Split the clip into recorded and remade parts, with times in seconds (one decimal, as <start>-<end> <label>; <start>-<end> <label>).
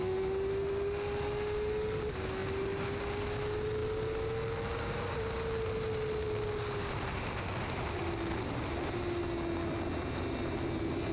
0.0-11.1 recorded